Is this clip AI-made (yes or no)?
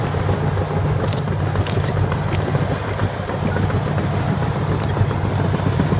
no